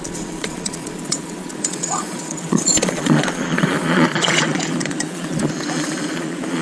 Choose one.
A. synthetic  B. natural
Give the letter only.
A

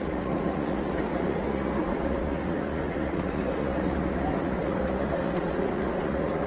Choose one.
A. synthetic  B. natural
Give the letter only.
A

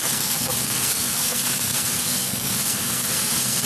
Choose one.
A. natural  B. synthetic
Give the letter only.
B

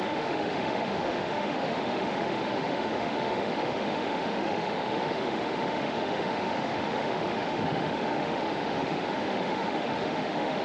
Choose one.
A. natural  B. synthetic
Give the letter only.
B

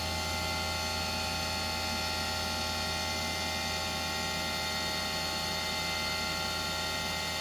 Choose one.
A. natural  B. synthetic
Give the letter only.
A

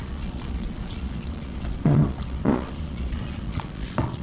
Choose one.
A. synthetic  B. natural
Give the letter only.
A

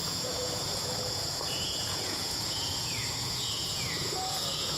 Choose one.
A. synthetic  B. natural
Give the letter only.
A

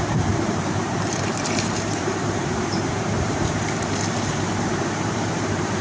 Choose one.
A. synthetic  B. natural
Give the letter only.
A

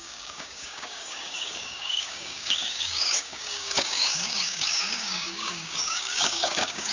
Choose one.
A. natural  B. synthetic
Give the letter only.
B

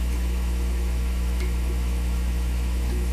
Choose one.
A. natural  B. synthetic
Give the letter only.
B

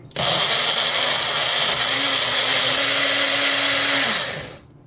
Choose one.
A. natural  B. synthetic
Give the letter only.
A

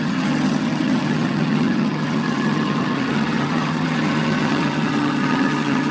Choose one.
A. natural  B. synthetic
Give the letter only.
B